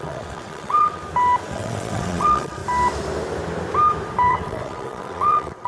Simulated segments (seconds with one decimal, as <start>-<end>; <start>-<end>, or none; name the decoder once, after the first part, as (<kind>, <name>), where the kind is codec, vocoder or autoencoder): 0.0-1.0 (vocoder, WaveNeXt); 1.5-2.6; 4.3-5.7